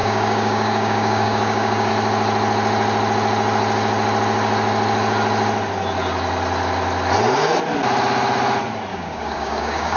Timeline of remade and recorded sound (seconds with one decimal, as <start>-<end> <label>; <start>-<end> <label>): 0.0-1.9 remade; 1.9-8.9 recorded; 8.9-10.0 remade